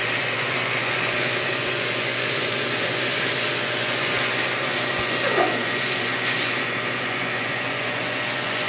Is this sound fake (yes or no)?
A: yes